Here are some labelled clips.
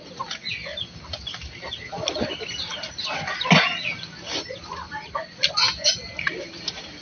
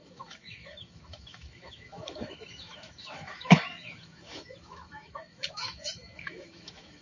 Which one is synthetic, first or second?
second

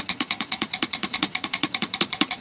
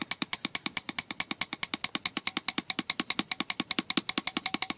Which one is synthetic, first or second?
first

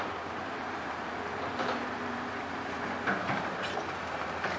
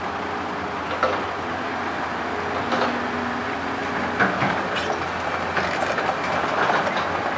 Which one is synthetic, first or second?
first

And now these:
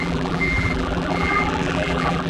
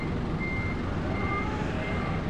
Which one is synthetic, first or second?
first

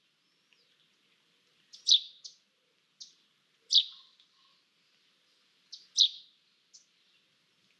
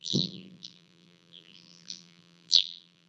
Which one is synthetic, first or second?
second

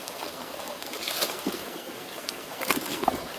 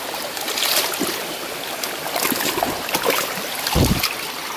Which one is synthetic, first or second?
first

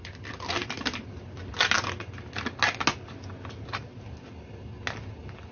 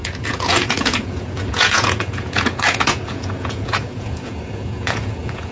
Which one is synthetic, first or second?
second